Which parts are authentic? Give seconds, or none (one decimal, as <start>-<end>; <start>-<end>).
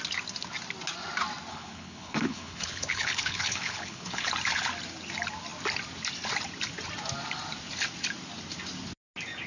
0.0-1.5; 4.3-9.5